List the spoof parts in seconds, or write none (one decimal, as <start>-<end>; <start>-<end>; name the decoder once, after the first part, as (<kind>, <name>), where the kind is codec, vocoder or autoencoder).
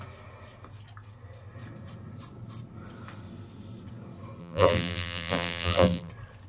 4.4-6.1 (vocoder, BigVGAN v2)